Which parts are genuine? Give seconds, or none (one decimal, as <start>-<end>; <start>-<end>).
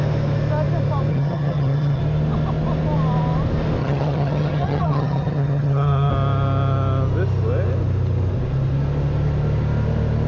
0.0-1.1; 2.0-3.8; 6.1-10.3